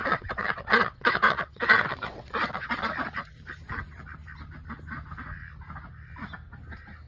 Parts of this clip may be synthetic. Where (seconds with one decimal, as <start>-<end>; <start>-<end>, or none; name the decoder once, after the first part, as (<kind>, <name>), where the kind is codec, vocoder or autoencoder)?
0.0-2.9 (vocoder, WaveNeXt)